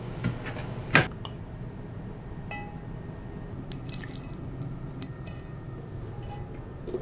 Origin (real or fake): real